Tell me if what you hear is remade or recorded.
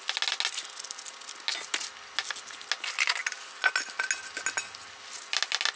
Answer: recorded